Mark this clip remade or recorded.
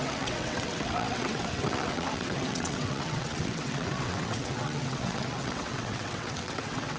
remade